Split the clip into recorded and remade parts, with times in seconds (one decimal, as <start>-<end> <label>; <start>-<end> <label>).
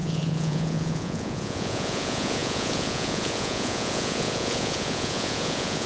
0.0-5.9 remade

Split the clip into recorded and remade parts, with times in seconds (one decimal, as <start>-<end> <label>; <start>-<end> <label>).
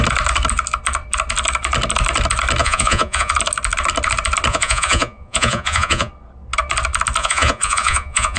0.0-2.6 recorded; 2.6-3.3 remade; 3.3-4.5 recorded; 4.5-6.1 remade; 6.1-7.2 recorded; 7.2-8.4 remade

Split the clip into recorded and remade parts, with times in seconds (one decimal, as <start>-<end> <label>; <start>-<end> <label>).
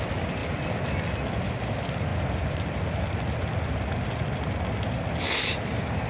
0.0-6.1 recorded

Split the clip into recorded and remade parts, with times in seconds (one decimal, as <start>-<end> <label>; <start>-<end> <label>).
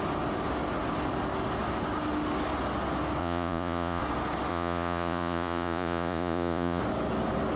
0.0-3.2 recorded; 3.2-4.0 remade; 4.0-4.5 recorded; 4.5-6.8 remade; 6.8-7.6 recorded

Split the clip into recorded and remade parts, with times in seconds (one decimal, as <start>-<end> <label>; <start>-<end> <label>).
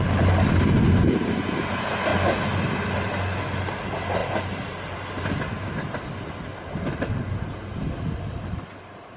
0.0-9.2 recorded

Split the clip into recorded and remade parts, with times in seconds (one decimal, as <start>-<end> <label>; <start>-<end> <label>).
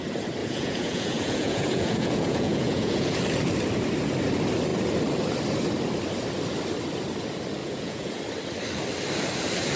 0.0-0.4 recorded; 0.4-3.2 remade; 3.2-7.6 recorded; 7.6-8.2 remade; 8.2-9.8 recorded